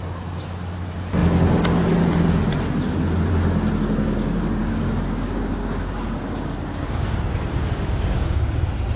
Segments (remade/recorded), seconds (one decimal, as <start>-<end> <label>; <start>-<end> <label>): 0.0-4.6 recorded; 4.6-8.6 remade; 8.6-9.0 recorded